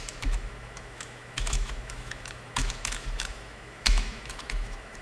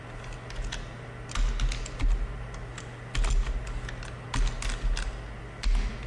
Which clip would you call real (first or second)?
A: second